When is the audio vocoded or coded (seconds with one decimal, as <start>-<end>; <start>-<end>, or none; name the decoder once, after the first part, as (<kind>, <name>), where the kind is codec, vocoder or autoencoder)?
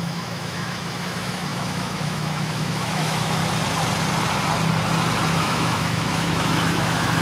0.0-3.4 (autoencoder, DAC-VAE); 5.3-7.2